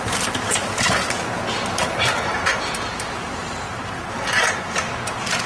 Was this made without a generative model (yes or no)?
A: yes